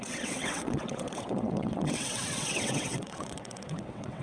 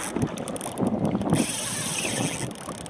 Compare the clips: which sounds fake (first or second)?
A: first